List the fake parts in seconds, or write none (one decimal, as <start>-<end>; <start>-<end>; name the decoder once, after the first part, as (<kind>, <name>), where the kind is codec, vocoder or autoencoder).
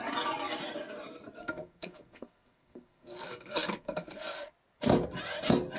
1.4-4.5 (codec, SNAC)